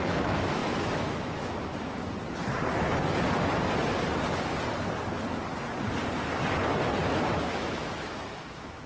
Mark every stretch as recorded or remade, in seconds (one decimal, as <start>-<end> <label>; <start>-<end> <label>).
0.0-2.0 remade; 2.0-7.1 recorded; 7.1-8.9 remade